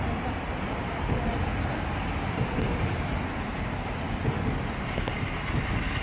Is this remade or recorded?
recorded